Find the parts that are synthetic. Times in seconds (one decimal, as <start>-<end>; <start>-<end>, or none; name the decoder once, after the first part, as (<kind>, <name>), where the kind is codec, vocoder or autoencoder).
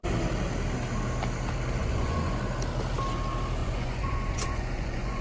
1.8-2.4 (vocoder, Vocos); 3.6-5.2